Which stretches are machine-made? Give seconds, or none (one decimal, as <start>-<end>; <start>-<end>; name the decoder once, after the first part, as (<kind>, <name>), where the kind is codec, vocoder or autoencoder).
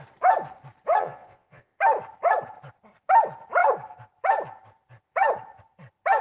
1.0-1.7 (vocoder, Vocos)